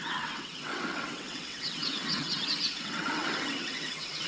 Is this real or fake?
fake